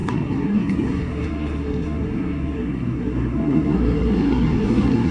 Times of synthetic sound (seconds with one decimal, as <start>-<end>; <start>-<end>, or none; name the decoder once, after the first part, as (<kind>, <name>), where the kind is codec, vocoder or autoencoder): 0.0-5.1 (codec, SNAC)